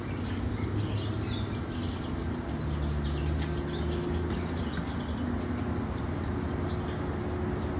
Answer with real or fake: real